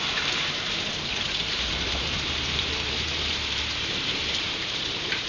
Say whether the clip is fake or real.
fake